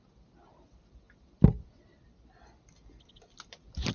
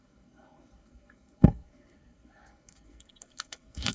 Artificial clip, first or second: second